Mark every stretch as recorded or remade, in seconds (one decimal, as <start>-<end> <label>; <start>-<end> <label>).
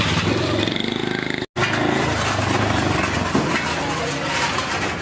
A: 0.0-5.0 recorded